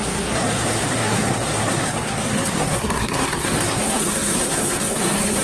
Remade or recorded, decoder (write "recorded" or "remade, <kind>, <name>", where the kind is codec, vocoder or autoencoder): remade, codec, SNAC